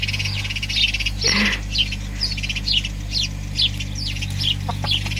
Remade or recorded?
recorded